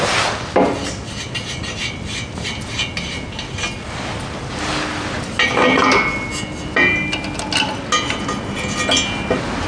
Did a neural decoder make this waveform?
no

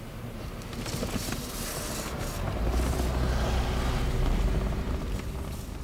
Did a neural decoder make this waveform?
no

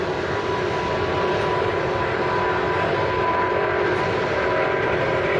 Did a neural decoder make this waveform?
no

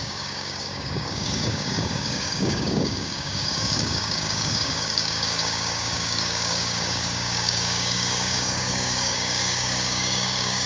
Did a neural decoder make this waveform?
yes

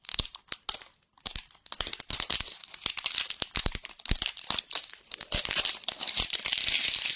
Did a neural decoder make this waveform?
no